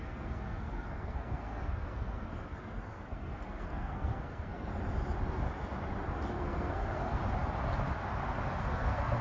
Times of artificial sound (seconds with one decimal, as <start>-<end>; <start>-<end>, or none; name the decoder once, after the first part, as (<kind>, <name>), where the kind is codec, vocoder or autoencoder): 0.0-4.7 (codec, SNAC); 6.3-7.2; 8.6-9.2